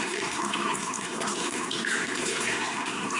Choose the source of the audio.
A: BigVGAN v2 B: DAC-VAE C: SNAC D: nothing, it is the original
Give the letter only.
C